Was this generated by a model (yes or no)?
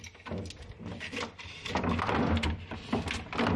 no